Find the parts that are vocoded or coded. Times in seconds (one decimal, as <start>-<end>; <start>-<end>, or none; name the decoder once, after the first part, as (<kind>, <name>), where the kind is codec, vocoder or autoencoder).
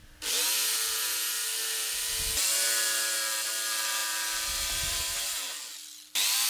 4.0-5.3 (vocoder, BigVGAN v2)